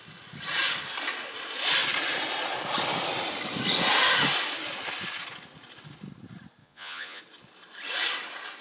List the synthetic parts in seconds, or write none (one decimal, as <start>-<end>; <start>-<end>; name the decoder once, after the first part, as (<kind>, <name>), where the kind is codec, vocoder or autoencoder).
6.6-7.2 (vocoder, Vocos)